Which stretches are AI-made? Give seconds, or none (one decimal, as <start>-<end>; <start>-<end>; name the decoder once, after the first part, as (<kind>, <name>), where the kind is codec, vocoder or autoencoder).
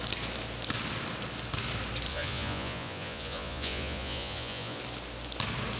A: 2.1-4.8 (vocoder, Vocos)